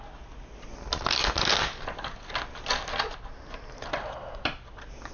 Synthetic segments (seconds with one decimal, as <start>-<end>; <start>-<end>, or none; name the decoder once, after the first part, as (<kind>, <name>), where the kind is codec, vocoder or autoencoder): none